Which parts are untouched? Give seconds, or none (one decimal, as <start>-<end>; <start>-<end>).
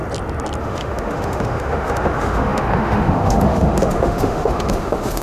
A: 0.0-0.6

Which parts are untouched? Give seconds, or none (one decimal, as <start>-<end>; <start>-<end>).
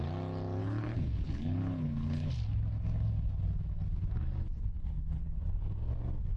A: 0.0-0.6; 2.3-4.4; 5.4-6.4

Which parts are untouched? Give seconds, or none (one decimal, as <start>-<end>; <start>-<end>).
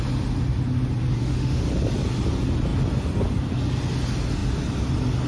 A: 0.0-1.2; 1.7-5.3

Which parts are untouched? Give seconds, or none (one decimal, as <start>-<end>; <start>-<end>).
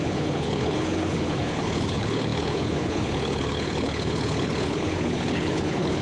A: none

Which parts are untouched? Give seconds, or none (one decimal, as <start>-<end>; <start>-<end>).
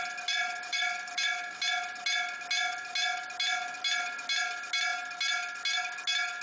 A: 0.0-0.4; 1.3-6.4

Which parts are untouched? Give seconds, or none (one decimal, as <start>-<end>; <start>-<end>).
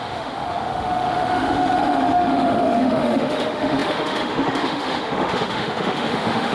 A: none